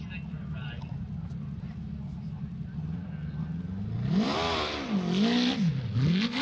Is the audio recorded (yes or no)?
yes